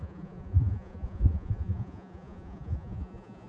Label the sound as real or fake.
fake